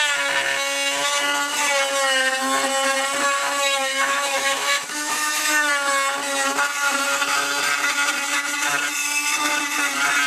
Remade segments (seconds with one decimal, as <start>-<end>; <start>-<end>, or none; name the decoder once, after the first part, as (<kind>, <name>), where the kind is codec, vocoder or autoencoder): 3.4-5.7 (autoencoder, DAC-VAE)